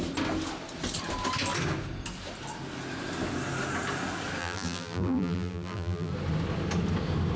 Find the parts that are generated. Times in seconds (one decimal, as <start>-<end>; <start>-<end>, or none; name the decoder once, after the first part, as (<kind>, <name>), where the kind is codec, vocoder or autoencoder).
4.4-6.1 (vocoder, BigVGAN v2)